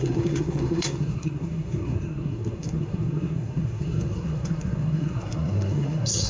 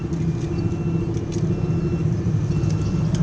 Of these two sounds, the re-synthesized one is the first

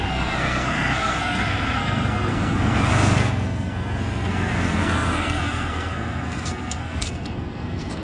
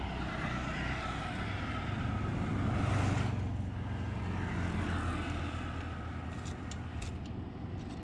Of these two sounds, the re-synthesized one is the first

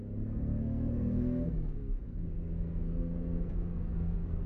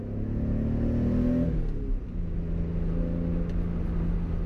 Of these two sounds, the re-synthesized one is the first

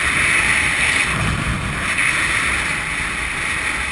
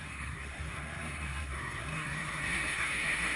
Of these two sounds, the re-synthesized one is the second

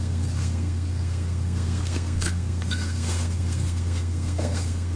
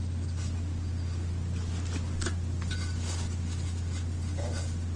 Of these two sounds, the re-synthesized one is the first